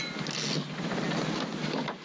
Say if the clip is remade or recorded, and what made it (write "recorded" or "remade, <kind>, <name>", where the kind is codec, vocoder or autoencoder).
recorded